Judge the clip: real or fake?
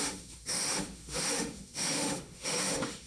fake